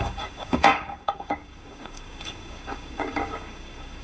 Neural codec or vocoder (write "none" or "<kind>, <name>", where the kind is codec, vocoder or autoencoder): codec, DAC